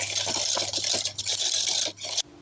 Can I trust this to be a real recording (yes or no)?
yes